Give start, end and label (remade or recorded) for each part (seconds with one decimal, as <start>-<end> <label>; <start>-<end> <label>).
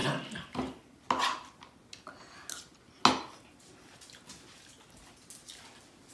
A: 0.0-6.1 recorded